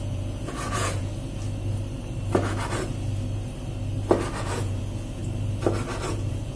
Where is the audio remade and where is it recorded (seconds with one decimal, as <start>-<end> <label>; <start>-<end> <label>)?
0.0-1.1 remade; 1.1-4.4 recorded; 4.4-5.2 remade; 5.2-6.1 recorded; 6.1-6.6 remade